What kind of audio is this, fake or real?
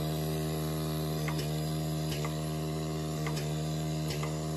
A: real